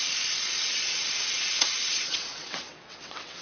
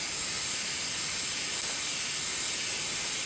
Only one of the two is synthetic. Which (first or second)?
first